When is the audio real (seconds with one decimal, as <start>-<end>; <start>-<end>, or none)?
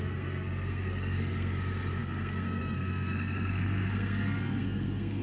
none